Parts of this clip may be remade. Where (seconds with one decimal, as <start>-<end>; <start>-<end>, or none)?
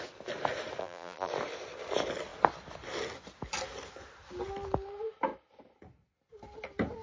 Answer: 0.8-1.3